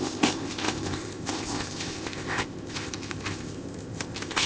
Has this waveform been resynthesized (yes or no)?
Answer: yes